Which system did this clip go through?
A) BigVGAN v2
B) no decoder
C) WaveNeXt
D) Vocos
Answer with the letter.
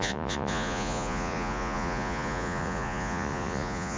D